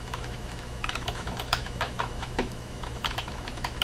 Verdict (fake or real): fake